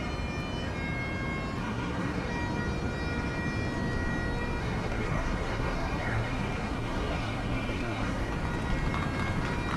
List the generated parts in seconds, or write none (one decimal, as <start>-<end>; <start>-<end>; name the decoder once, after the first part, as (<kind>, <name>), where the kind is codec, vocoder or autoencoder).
1.6-2.3 (codec, SNAC); 4.6-8.3